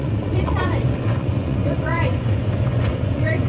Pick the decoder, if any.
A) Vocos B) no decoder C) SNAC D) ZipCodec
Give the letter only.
A